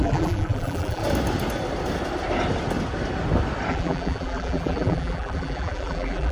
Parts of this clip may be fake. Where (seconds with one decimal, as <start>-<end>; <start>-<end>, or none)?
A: 0.0-1.0; 3.7-6.3

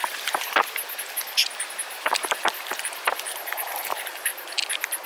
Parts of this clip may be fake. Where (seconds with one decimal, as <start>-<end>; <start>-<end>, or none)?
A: 1.7-4.3